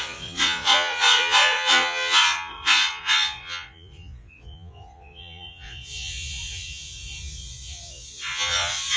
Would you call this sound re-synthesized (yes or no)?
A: yes